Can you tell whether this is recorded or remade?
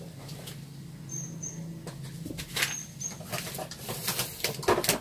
recorded